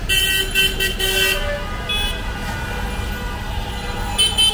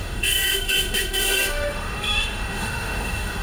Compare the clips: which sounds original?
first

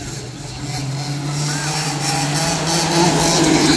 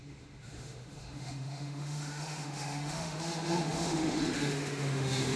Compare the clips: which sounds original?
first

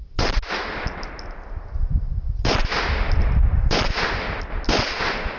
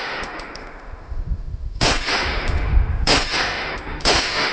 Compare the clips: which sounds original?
first